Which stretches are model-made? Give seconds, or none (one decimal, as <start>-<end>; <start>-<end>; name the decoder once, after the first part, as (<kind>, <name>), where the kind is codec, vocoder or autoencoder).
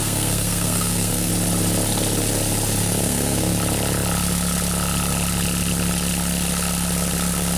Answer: 0.0-1.3 (codec, SNAC); 2.8-3.5